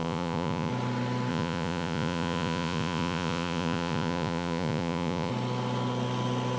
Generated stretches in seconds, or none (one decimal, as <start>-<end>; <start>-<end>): 0.0-0.7; 1.3-5.3

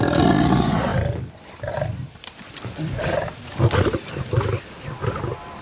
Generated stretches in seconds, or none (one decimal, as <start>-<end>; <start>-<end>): none

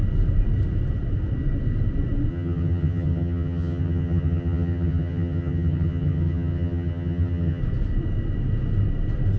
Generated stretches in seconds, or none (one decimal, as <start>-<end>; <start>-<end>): 2.3-7.6

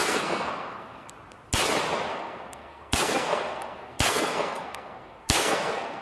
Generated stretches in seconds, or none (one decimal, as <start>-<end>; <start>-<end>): 0.0-1.1; 2.1-6.0

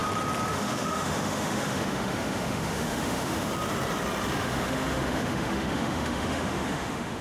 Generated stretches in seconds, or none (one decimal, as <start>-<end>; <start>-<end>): 0.5-3.5; 4.3-7.2